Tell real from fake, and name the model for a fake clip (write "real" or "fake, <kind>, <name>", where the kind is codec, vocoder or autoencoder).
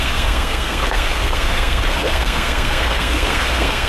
fake, codec, SNAC